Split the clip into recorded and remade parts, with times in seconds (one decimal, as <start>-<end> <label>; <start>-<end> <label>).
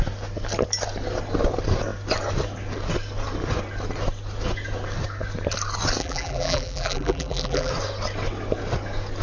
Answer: 0.0-6.0 recorded; 6.0-7.7 remade; 7.7-9.2 recorded